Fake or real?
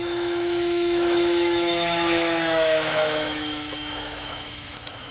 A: fake